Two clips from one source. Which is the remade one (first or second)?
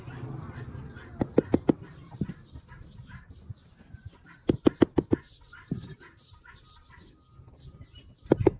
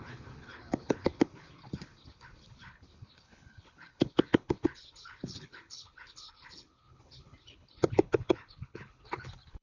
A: second